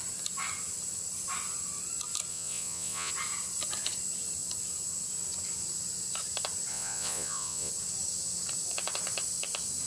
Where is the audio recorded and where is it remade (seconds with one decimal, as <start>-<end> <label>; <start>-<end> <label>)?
0.0-2.3 recorded; 2.3-3.1 remade; 3.1-6.7 recorded; 6.7-7.7 remade; 7.7-9.9 recorded